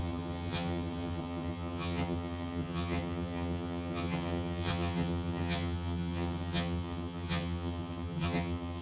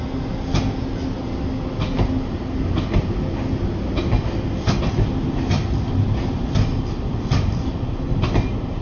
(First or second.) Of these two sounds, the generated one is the first